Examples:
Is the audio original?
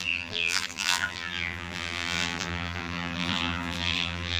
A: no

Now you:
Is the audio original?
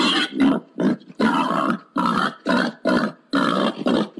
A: yes